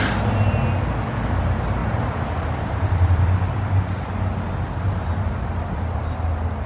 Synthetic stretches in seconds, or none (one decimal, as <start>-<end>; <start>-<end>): 1.8-5.8